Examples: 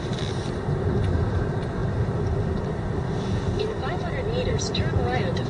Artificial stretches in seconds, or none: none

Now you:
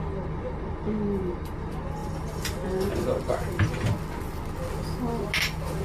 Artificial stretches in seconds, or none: none

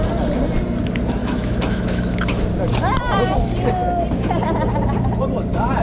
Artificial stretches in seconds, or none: 1.2-2.4 (autoencoder, DAC-VAE)